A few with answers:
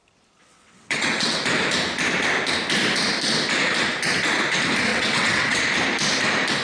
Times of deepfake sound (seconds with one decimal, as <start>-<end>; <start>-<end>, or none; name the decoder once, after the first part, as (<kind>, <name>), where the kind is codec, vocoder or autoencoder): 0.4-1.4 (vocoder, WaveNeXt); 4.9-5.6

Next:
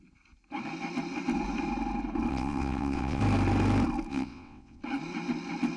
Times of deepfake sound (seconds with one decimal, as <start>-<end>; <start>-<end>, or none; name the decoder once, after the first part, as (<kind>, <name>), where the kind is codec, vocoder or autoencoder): 2.3-3.2 (vocoder, WaveNeXt); 4.1-4.8

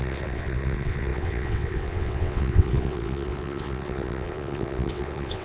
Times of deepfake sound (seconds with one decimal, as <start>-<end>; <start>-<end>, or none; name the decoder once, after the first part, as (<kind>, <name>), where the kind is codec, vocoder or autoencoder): 0.0-5.4 (vocoder, WaveNeXt)

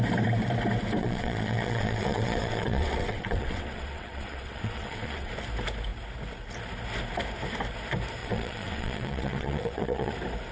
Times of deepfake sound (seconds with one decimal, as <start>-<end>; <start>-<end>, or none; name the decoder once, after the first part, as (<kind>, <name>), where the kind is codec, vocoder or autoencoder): 1.0-5.3 (vocoder, WaveNeXt); 8.2-10.1

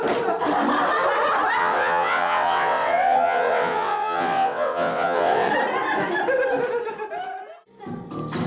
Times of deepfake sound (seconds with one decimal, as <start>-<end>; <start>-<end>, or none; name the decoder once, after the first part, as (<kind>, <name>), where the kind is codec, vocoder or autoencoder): 1.6-5.5 (vocoder, WaveNeXt)